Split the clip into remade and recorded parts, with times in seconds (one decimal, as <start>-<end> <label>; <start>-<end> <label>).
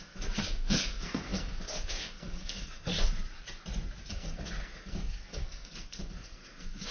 0.0-2.9 remade; 2.9-4.1 recorded; 4.1-6.9 remade